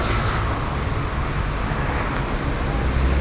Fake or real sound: real